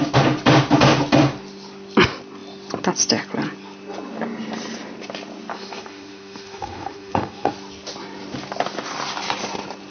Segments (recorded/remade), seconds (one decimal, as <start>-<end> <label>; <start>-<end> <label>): 0.0-5.5 recorded; 5.5-7.5 remade; 7.5-9.9 recorded

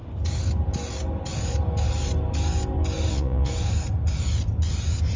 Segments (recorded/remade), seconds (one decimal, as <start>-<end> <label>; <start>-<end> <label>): 0.0-3.1 recorded; 3.1-3.5 remade; 3.5-5.2 recorded

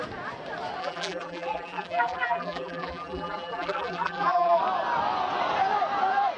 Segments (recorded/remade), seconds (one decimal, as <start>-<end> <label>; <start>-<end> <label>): 0.0-0.8 recorded; 0.8-4.6 remade; 4.6-6.4 recorded

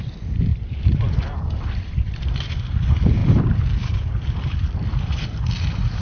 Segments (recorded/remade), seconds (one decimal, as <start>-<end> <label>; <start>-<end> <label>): 0.0-6.0 recorded

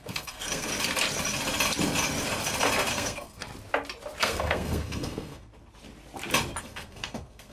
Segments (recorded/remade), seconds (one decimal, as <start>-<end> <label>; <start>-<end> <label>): 0.0-0.7 remade; 0.7-2.9 recorded; 2.9-3.5 remade; 3.5-4.2 recorded; 4.2-5.5 remade; 5.5-6.6 recorded; 6.6-7.5 remade

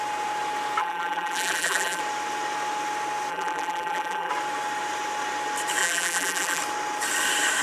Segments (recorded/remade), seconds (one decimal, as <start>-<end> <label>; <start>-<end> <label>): 0.0-0.8 recorded; 0.8-2.0 remade; 2.0-3.3 recorded; 3.3-4.3 remade; 4.3-5.8 recorded; 5.8-6.6 remade; 6.6-7.6 recorded

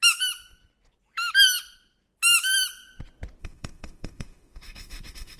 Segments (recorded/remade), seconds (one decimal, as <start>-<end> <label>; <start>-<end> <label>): 0.0-3.4 recorded; 3.4-5.4 remade